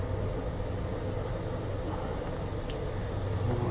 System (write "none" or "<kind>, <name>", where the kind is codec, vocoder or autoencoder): none